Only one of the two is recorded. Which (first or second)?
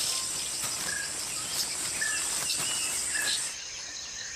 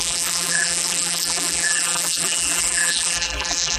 first